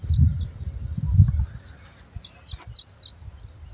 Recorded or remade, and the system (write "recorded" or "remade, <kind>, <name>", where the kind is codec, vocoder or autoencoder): recorded